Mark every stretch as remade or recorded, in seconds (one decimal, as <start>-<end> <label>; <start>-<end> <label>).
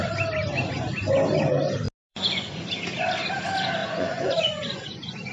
0.0-2.1 recorded; 2.1-2.6 remade; 2.6-3.8 recorded; 3.8-5.3 remade